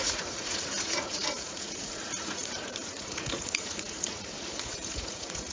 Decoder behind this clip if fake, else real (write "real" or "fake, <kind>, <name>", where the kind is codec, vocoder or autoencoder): fake, vocoder, Vocos